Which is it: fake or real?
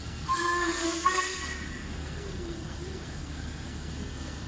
fake